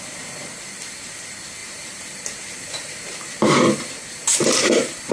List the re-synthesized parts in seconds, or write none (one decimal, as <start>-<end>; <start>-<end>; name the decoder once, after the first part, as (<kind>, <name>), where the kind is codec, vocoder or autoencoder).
1.6-5.1 (vocoder, BigVGAN v2)